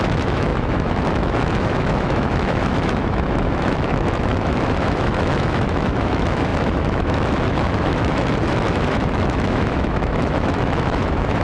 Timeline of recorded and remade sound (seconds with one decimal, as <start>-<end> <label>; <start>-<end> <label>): 0.0-11.4 remade